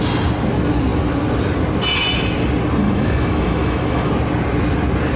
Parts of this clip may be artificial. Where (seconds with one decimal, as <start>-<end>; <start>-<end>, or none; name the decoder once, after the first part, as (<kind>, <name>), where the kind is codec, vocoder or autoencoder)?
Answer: 2.8-4.1 (autoencoder, DAC-VAE)